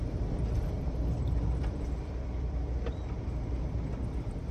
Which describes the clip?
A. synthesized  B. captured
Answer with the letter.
A